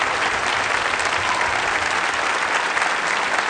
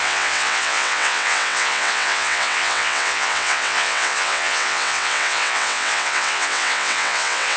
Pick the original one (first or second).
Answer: first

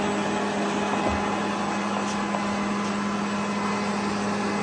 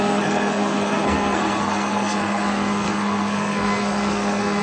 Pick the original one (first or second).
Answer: first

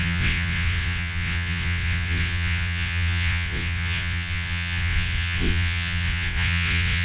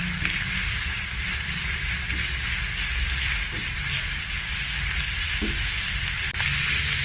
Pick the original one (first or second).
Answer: second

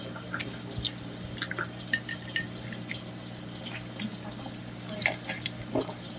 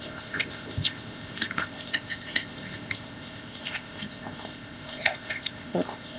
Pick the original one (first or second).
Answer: first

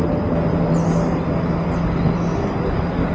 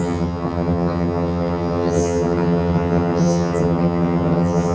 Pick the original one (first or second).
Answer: first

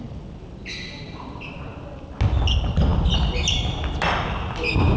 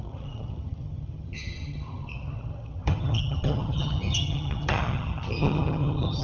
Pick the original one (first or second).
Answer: first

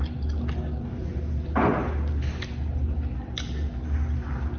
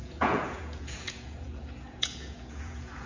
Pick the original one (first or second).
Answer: first